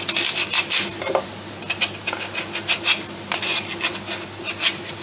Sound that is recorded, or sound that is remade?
recorded